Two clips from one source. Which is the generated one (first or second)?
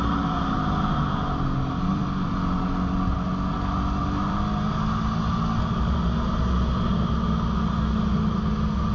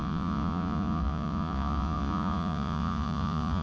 second